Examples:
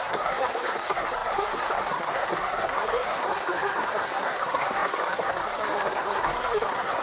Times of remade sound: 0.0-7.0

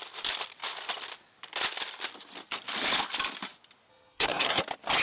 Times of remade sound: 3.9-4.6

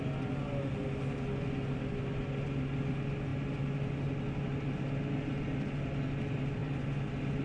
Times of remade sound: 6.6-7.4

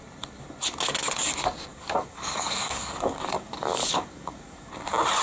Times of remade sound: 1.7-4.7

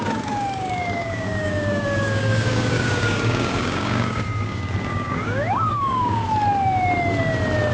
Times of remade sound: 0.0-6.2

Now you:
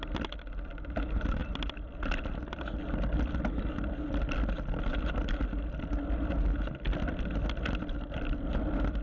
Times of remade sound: none

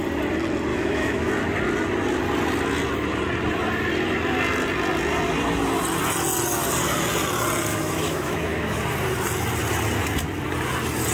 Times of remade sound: 0.7-1.3; 7.7-8.8

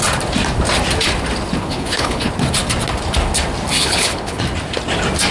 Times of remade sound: 1.6-2.3; 3.8-4.4